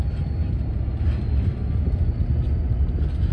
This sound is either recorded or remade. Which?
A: recorded